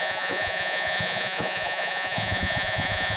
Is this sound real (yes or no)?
no